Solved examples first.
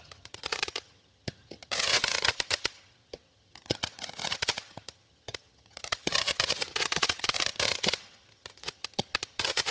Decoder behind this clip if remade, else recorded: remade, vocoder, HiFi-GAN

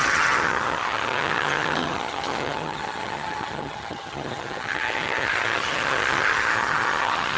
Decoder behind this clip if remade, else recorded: remade, vocoder, HiFi-GAN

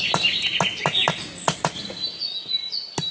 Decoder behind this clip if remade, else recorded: recorded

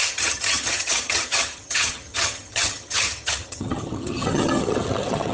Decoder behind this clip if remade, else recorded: remade, vocoder, HiFi-GAN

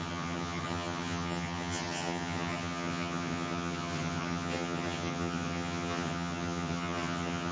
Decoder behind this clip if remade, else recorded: remade, vocoder, HiFi-GAN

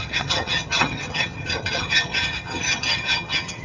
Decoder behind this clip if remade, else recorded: remade, vocoder, HiFi-GAN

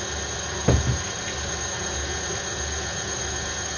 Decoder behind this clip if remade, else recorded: recorded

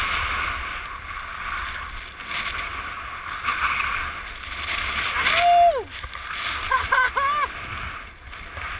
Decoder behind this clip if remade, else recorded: recorded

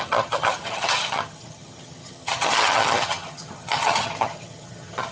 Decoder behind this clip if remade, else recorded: remade, vocoder, HiFi-GAN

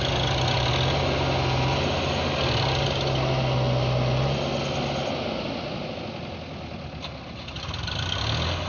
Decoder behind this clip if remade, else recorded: recorded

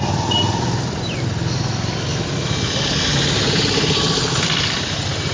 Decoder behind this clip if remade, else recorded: recorded